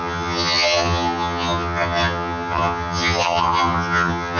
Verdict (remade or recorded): remade